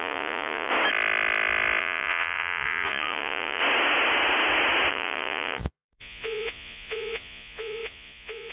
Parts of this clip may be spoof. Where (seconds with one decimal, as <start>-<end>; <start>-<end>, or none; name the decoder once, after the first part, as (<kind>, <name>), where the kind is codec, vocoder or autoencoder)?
0.0-0.7 (vocoder, Vocos); 1.8-3.6; 4.9-8.5